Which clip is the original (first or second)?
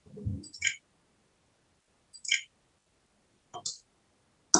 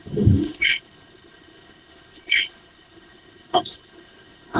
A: first